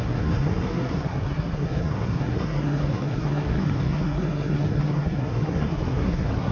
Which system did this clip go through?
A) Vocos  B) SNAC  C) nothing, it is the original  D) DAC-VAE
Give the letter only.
B